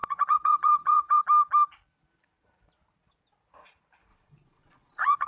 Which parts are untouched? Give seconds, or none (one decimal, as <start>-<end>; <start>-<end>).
1.2-4.1